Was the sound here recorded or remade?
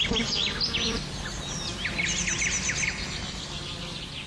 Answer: recorded